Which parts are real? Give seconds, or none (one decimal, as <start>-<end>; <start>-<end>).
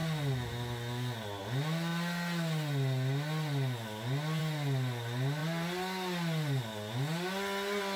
0.0-8.0